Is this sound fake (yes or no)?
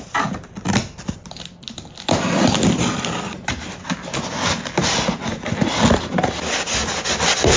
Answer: no